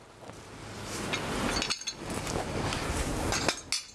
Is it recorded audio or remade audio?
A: recorded